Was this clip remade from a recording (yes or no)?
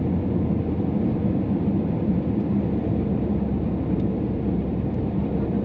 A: yes